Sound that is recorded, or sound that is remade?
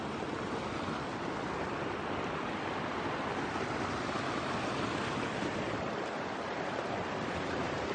recorded